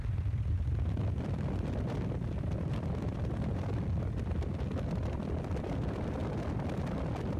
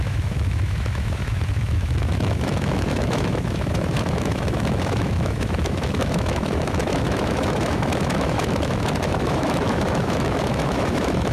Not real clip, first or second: second